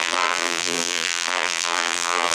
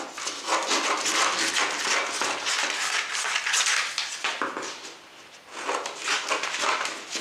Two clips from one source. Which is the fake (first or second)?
first